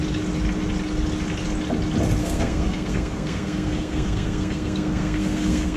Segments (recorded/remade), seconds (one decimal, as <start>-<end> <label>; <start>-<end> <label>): 0.0-2.2 recorded; 2.2-5.8 remade